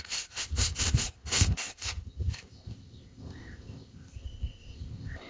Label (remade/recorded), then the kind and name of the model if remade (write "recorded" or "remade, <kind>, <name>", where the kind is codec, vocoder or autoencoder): remade, codec, ZipCodec